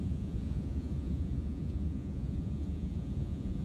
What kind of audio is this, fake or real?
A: fake